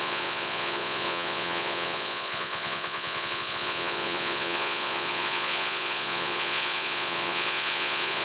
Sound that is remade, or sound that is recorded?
remade